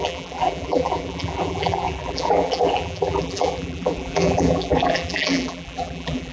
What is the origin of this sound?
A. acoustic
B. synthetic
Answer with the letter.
B